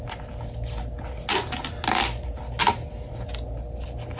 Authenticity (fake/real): real